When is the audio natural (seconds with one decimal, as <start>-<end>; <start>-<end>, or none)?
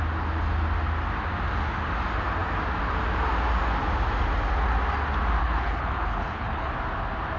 0.0-5.4; 6.7-7.4